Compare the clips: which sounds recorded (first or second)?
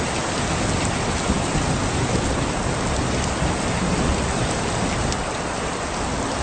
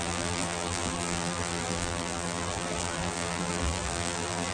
first